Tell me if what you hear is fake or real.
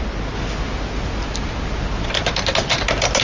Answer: real